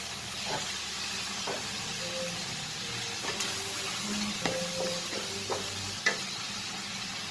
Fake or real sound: real